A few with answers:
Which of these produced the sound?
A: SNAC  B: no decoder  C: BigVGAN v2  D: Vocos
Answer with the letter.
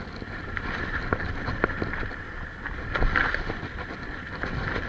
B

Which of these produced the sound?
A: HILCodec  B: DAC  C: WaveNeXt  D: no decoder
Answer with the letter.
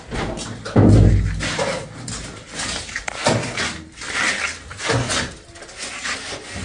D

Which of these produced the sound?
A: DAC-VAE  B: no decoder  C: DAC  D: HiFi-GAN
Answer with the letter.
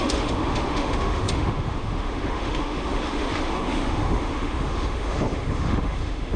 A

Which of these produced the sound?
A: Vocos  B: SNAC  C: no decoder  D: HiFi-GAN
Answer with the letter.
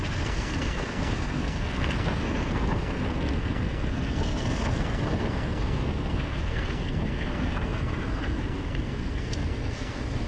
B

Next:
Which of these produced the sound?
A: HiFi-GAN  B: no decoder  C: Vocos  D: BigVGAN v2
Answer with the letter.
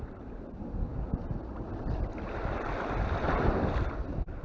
B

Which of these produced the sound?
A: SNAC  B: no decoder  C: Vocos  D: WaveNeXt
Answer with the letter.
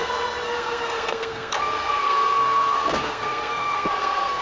A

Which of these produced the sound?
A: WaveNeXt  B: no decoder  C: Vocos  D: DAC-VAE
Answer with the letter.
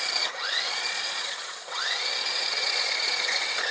C